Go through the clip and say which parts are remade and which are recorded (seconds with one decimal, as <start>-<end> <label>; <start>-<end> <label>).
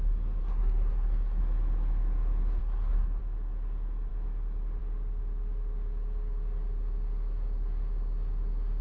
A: 0.0-0.4 recorded; 0.4-1.4 remade; 1.4-2.6 recorded; 2.6-3.2 remade; 3.2-8.8 recorded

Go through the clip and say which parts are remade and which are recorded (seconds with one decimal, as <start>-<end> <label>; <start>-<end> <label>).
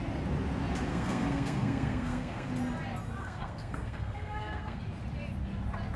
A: 0.0-0.9 recorded; 0.9-2.5 remade; 2.5-3.2 recorded; 3.2-4.8 remade; 4.8-6.0 recorded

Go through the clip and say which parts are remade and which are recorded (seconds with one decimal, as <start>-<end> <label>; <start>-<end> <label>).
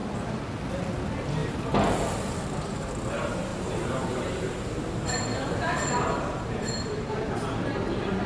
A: 0.0-1.4 recorded; 1.4-2.9 remade; 2.9-3.5 recorded; 3.5-7.3 remade; 7.3-8.3 recorded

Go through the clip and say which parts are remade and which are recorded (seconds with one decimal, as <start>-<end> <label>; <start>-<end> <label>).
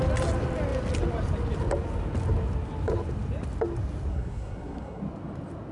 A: 0.0-4.1 recorded; 4.1-5.0 remade; 5.0-5.7 recorded